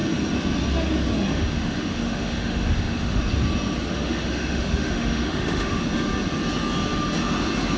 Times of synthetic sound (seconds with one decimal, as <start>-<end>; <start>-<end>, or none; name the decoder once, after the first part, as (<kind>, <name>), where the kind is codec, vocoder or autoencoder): 1.3-3.2 (autoencoder, DAC-VAE); 3.9-5.8